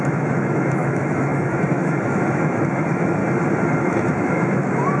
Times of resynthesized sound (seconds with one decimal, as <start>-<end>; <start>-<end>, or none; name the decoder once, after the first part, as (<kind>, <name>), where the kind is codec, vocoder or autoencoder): 0.0-3.2 (autoencoder, DAC-VAE); 3.8-5.0